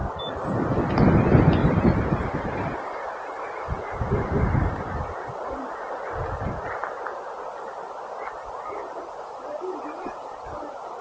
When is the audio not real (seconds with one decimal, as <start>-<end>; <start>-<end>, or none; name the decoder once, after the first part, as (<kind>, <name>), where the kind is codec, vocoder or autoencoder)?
1.6-6.1 (vocoder, BigVGAN v2)